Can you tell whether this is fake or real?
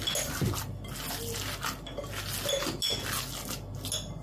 real